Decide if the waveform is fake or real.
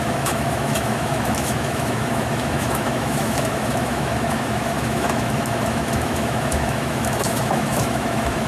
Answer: fake